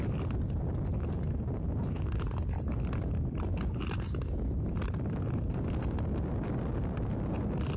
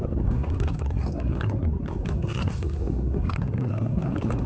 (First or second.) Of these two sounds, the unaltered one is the first